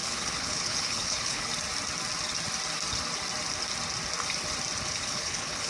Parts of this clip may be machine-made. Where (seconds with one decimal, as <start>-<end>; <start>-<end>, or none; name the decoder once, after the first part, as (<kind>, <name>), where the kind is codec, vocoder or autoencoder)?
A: 0.0-1.5 (codec, HILCodec); 4.9-5.7